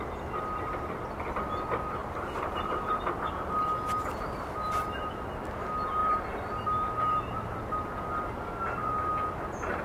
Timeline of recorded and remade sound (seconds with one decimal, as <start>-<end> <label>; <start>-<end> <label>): 0.0-2.0 recorded; 2.0-3.1 remade; 3.1-6.0 recorded; 6.0-6.5 remade; 6.5-9.8 recorded